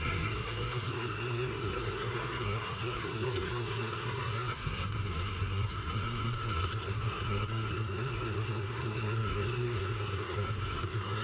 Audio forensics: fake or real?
fake